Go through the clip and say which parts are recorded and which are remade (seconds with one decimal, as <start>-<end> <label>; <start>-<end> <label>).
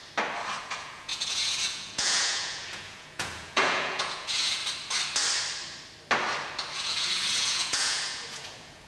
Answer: 0.0-0.6 recorded; 0.6-4.6 remade; 4.6-6.8 recorded; 6.8-8.9 remade